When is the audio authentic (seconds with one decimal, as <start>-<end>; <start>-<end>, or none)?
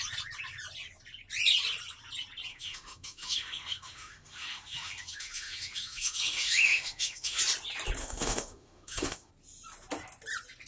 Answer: 0.0-2.5; 7.4-8.0; 9.3-10.7